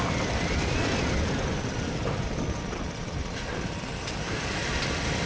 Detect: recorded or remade remade